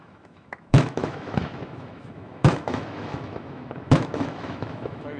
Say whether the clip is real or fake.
fake